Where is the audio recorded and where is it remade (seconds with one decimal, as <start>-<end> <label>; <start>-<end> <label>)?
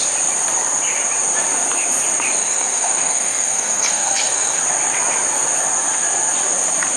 0.0-2.4 recorded; 2.4-4.6 remade; 4.6-7.0 recorded